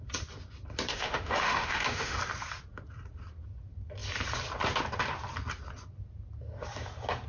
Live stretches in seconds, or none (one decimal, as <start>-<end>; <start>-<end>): 0.0-0.9; 2.2-7.3